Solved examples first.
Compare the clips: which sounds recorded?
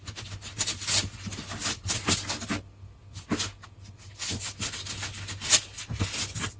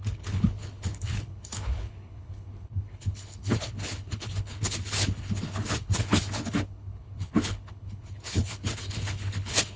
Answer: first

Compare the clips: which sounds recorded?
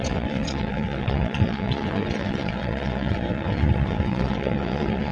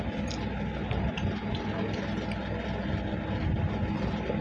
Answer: second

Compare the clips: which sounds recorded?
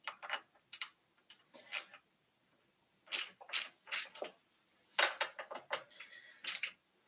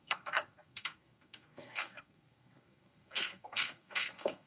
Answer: first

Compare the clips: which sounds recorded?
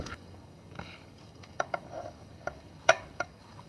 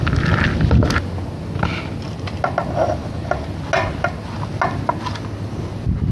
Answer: second